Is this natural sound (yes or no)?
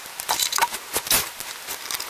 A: yes